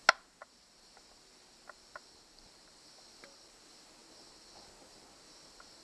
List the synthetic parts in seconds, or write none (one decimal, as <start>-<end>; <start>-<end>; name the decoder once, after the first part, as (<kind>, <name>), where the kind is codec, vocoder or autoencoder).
none